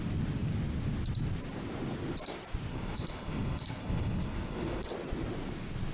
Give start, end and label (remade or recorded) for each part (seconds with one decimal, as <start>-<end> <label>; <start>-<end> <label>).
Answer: 0.0-2.7 recorded; 2.7-4.9 remade; 4.9-5.9 recorded

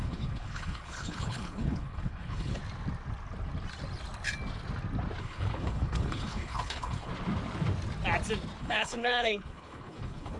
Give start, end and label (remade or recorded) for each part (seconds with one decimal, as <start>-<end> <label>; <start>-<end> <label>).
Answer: 0.0-2.6 remade; 2.6-5.2 recorded; 5.2-7.1 remade; 7.1-8.6 recorded; 8.6-10.4 remade